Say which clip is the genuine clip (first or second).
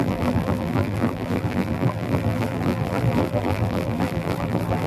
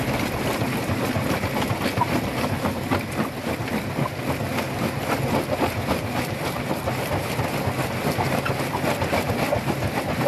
second